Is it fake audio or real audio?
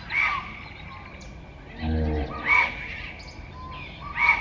real